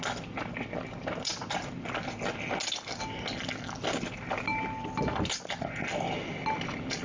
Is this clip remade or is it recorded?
recorded